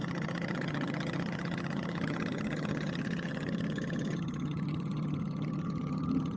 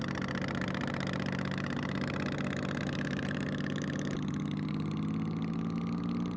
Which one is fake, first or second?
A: first